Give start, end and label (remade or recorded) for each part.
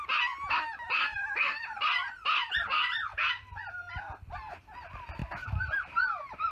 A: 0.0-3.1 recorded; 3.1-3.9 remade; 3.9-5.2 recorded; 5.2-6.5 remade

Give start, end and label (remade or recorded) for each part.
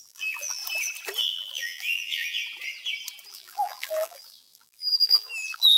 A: 0.0-0.6 remade; 0.6-1.2 recorded; 1.2-2.4 remade; 2.4-3.3 recorded; 3.3-5.8 remade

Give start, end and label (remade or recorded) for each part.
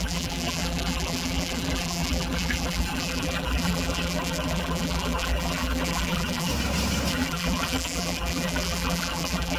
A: 0.0-6.5 remade; 6.5-7.1 recorded; 7.1-9.6 remade